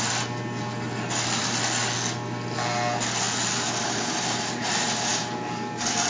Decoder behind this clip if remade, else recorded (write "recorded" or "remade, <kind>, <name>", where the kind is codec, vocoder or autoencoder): recorded